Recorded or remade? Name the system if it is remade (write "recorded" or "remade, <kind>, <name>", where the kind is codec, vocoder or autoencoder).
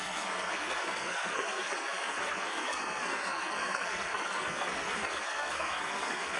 remade, codec, SNAC